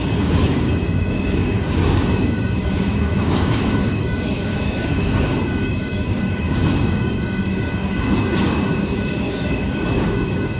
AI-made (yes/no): yes